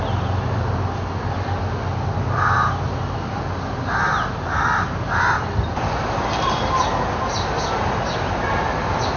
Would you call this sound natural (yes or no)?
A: yes